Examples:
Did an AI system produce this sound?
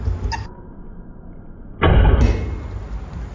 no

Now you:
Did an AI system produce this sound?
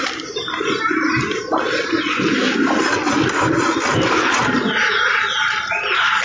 no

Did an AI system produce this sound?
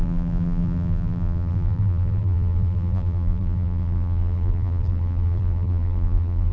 yes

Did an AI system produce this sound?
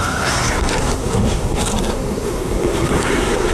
yes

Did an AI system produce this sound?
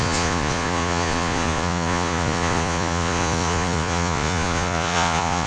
yes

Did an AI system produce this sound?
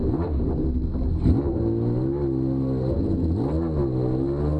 no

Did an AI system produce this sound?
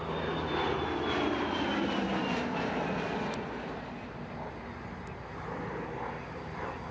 no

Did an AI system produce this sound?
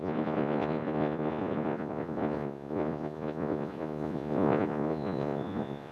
yes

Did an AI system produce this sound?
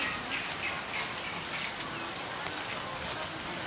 no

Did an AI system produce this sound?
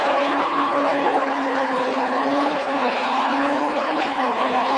yes